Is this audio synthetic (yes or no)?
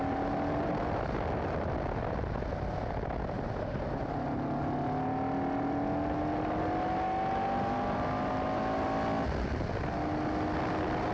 no